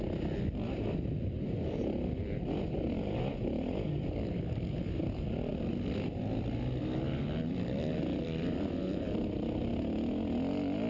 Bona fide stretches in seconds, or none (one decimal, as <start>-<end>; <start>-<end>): 0.0-10.9